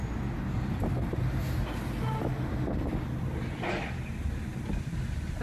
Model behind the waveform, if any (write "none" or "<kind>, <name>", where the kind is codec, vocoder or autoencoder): none